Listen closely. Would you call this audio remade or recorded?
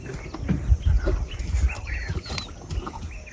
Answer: recorded